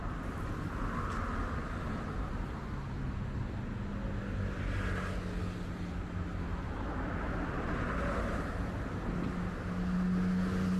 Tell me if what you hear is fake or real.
real